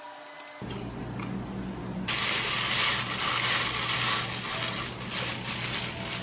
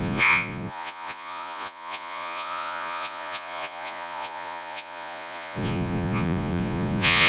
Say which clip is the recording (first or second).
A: first